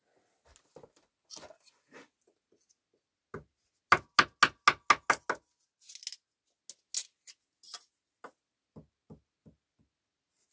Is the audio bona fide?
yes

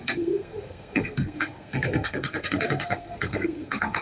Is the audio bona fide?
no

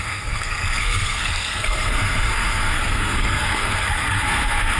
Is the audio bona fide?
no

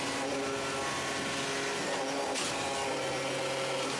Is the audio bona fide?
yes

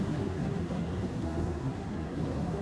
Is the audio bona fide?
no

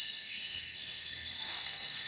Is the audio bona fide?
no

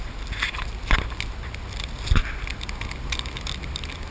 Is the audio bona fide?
yes